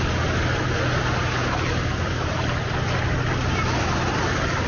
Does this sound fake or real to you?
real